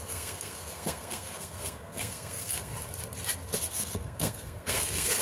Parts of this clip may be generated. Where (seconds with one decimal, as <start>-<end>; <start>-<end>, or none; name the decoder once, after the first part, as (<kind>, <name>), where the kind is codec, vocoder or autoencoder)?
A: 0.0-2.7 (codec, SNAC); 3.7-5.2